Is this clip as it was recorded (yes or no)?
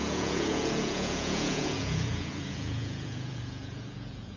no